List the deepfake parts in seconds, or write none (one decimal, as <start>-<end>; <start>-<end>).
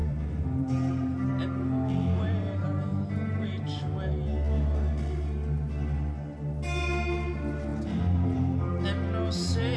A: 0.0-1.3; 2.9-3.8; 7.7-8.7